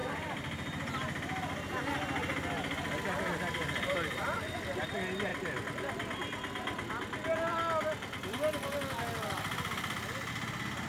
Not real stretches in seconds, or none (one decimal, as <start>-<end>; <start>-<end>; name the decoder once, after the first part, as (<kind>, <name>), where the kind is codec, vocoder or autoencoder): 5.3-10.3 (vocoder, BigVGAN v2)